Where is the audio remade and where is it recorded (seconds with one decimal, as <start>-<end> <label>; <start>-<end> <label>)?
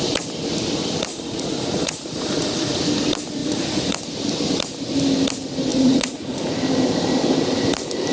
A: 0.0-1.1 recorded; 1.1-2.8 remade; 2.8-3.4 recorded; 3.4-4.0 remade; 4.0-5.7 recorded; 5.7-6.5 remade; 6.5-8.1 recorded